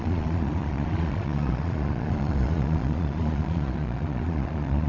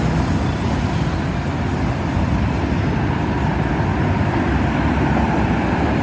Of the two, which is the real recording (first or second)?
second